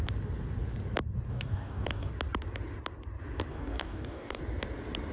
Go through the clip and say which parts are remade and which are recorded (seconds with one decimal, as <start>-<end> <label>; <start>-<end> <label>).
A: 0.0-1.3 recorded; 1.3-2.1 remade; 2.1-3.5 recorded; 3.5-4.4 remade; 4.4-5.1 recorded